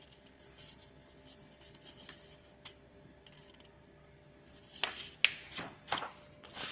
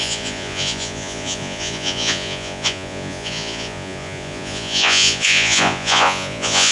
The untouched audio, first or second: first